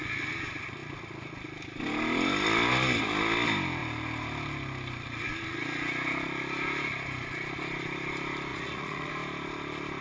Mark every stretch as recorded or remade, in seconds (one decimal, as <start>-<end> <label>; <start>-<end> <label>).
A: 0.0-8.5 recorded; 8.5-9.1 remade; 9.1-10.0 recorded